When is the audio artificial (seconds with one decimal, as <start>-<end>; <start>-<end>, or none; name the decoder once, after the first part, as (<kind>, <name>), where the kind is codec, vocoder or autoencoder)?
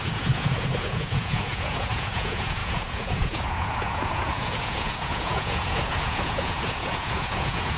0.0-7.8 (vocoder, Vocos)